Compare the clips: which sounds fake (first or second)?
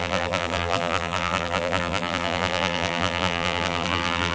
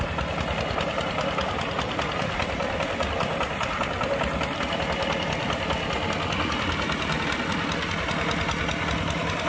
first